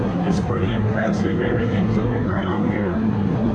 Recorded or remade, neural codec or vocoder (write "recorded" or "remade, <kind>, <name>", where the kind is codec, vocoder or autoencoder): remade, codec, SNAC